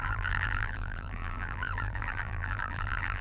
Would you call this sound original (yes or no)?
no